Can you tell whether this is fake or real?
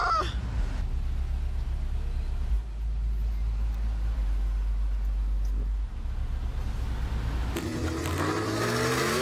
real